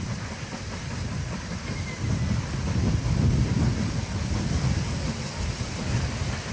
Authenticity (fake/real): real